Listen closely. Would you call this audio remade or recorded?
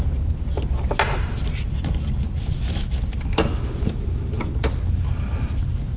recorded